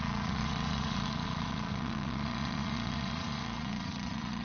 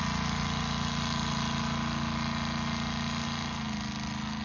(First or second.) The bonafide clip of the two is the second